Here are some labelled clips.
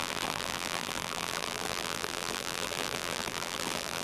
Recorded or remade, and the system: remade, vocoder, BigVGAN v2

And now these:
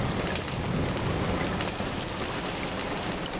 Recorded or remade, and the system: recorded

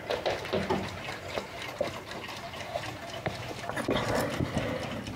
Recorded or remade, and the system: recorded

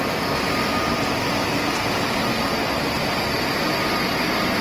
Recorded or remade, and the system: recorded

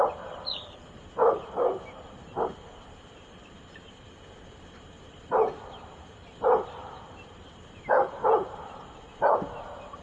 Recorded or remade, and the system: remade, vocoder, BigVGAN v2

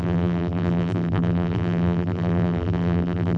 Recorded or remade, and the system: remade, vocoder, BigVGAN v2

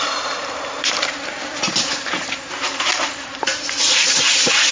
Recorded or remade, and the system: remade, vocoder, BigVGAN v2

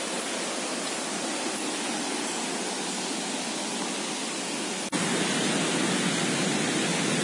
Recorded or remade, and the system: recorded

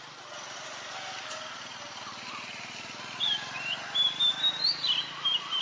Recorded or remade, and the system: recorded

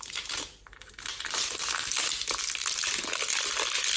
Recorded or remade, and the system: recorded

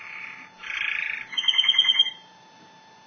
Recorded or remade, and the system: recorded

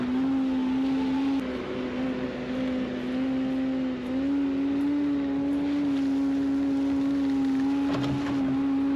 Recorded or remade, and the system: recorded